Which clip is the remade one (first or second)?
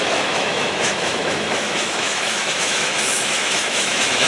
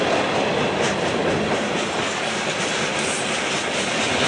first